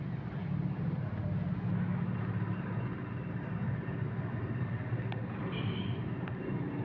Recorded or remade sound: recorded